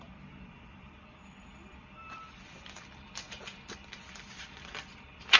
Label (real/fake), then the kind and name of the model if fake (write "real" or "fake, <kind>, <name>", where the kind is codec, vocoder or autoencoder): fake, vocoder, BigVGAN v2